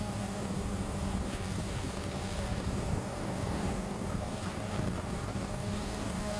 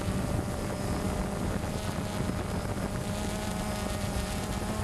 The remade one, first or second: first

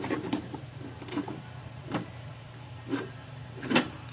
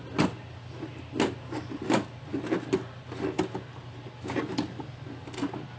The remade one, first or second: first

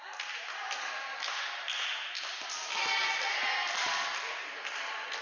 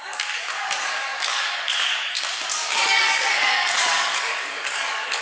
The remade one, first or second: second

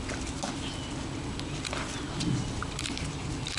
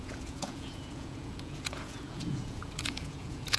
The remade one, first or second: second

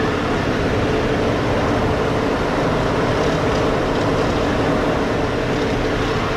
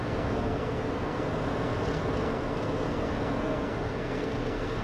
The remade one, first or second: second